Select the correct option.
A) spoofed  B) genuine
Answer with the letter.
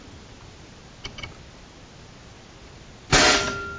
B